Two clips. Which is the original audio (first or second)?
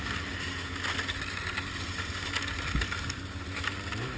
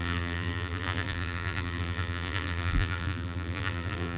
first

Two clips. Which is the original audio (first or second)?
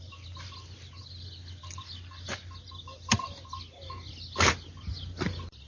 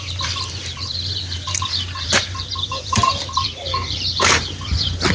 first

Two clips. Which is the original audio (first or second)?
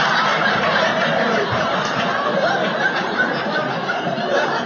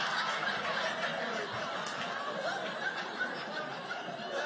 second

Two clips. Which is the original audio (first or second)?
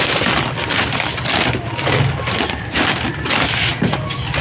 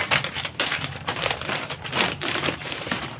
first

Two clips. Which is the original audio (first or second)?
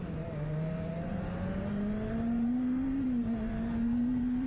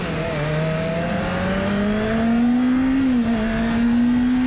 second